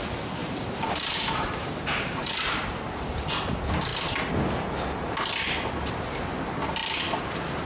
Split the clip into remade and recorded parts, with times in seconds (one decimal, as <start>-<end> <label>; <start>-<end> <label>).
0.0-0.4 recorded; 0.4-2.3 remade; 2.3-7.7 recorded